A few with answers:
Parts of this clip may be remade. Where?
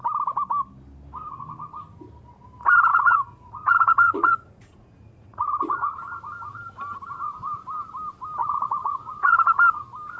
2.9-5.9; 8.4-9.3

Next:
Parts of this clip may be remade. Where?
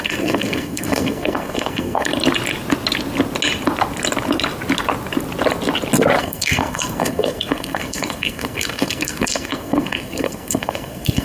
0.0-2.1; 6.2-11.2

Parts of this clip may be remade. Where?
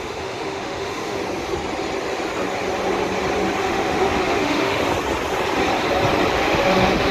0.0-1.2; 3.6-4.9; 6.3-7.1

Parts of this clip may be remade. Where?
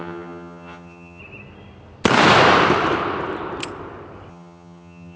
0.0-1.2; 4.3-5.2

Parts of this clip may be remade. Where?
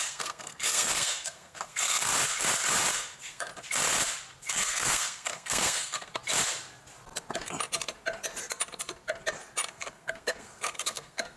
0.0-2.1; 2.9-3.5; 4.5-6.1; 9.7-11.4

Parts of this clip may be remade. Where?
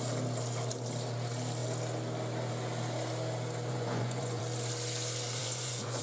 3.7-4.4; 5.4-6.0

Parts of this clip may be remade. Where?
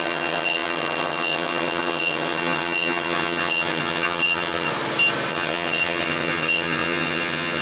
0.0-4.7; 5.3-7.6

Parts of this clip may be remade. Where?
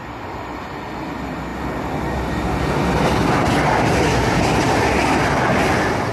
none